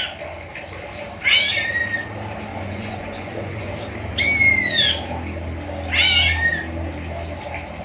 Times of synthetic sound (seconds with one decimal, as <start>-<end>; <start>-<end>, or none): 2.5-3.7